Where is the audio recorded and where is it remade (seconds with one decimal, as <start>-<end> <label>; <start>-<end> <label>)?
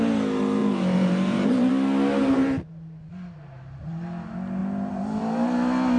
0.0-0.6 recorded; 0.6-1.7 remade; 1.7-6.0 recorded